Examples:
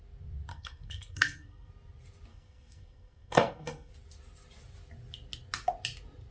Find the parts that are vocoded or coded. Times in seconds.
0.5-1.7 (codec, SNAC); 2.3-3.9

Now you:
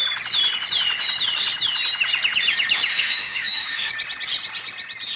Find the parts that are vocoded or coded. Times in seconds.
2.9-3.9 (autoencoder, DAC-VAE)

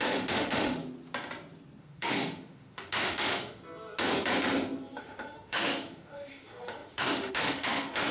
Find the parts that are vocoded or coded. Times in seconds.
0.0-0.8 (autoencoder, DAC-VAE); 1.8-3.6; 5.0-8.1

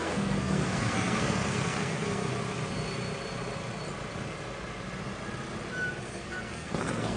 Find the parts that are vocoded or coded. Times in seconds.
0.0-2.3 (codec, SNAC); 6.0-7.2

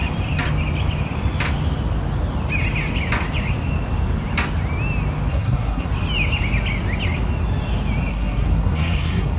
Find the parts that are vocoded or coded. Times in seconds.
5.3-5.9 (codec, SNAC); 8.1-9.4

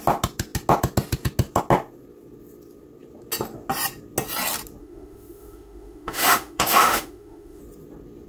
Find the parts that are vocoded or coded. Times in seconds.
4.8-7.6 (autoencoder, DAC-VAE)

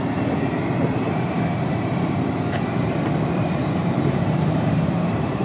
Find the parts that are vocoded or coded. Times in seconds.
3.6-5.4 (vocoder, BigVGAN v2)

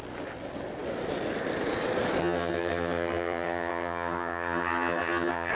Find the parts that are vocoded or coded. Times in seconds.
2.2-5.5 (vocoder, HiFi-GAN)